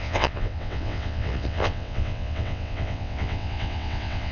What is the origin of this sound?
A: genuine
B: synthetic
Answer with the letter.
B